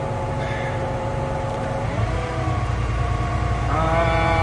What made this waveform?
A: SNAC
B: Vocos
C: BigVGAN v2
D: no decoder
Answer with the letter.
C